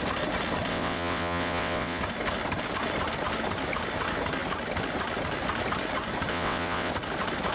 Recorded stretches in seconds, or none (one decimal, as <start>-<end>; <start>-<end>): 0.0-0.7; 2.0-6.3; 6.9-7.5